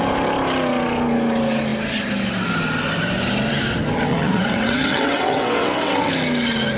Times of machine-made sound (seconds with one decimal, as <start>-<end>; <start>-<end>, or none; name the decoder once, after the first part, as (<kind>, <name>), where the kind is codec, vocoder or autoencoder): 4.1-6.1 (vocoder, WaveNeXt)